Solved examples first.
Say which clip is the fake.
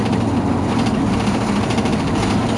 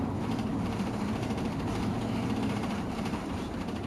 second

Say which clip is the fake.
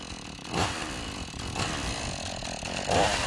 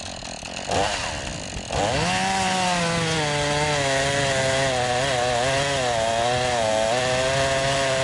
first